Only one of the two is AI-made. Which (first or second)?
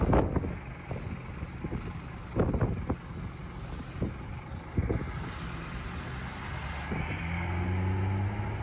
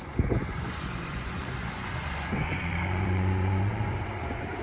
second